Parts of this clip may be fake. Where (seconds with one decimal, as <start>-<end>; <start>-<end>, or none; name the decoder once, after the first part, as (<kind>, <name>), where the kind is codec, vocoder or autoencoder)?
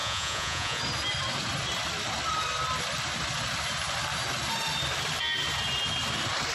0.0-0.8 (vocoder, Vocos)